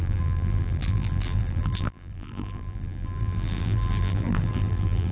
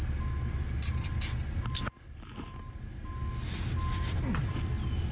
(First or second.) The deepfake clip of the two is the first